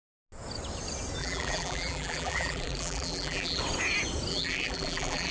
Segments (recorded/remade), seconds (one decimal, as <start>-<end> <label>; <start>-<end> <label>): 0.0-1.2 recorded; 1.2-3.6 remade; 3.6-4.3 recorded; 4.3-5.3 remade